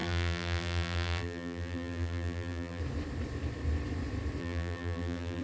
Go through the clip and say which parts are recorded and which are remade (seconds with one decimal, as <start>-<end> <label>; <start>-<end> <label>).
0.0-2.8 remade; 2.8-4.4 recorded; 4.4-5.4 remade